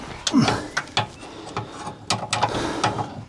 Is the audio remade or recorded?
recorded